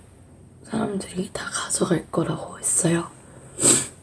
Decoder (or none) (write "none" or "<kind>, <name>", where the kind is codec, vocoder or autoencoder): none